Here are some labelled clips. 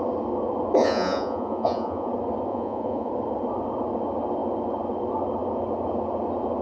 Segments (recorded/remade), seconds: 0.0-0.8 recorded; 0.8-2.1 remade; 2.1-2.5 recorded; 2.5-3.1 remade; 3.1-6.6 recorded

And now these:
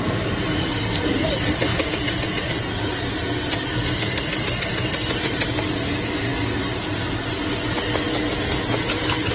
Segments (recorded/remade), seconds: 0.0-1.7 recorded; 1.7-2.5 remade; 2.5-9.3 recorded